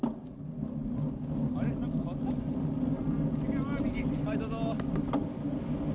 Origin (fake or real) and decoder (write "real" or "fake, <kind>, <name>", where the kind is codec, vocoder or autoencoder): real